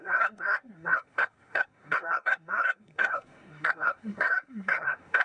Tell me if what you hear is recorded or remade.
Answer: remade